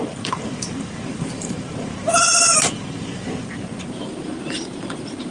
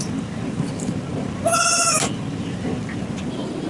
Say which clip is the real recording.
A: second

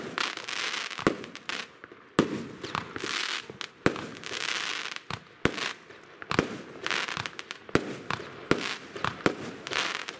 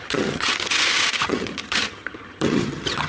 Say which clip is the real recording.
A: first